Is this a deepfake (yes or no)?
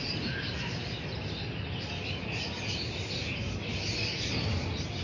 no